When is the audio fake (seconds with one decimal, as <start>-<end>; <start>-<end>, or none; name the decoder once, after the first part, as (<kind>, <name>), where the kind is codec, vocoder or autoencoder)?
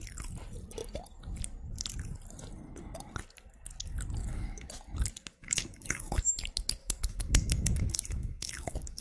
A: 4.2-4.7 (codec, DAC); 5.4-6.3; 6.8-9.0